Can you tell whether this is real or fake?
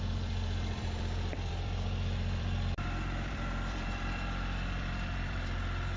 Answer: fake